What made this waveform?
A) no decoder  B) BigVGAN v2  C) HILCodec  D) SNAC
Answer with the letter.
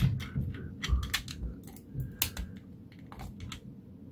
A